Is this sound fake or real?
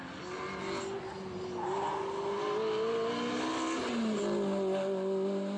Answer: real